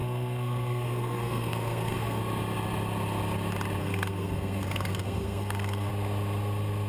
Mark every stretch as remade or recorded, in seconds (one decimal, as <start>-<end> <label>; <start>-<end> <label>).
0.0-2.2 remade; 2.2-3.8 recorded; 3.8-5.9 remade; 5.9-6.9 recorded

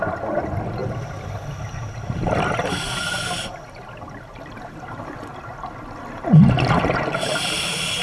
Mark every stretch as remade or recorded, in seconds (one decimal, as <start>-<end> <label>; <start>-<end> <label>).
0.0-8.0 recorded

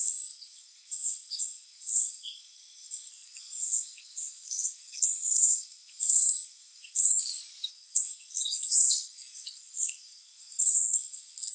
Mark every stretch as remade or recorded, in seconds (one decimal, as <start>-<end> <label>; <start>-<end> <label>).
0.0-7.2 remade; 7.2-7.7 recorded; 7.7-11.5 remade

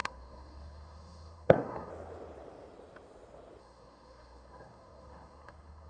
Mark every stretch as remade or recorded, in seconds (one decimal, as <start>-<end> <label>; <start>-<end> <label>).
0.0-1.9 remade; 1.9-3.6 recorded; 3.6-5.9 remade

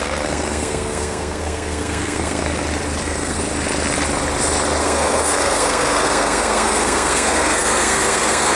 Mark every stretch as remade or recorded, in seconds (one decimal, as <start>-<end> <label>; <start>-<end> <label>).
0.0-2.4 remade; 2.4-3.0 recorded; 3.0-3.4 remade; 3.4-4.8 recorded; 4.8-8.6 remade

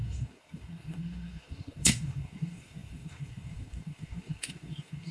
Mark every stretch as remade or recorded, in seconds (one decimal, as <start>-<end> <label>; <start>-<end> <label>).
0.0-5.1 remade

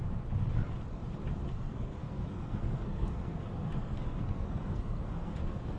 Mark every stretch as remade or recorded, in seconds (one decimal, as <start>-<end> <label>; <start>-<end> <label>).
0.0-1.5 recorded; 1.5-5.8 remade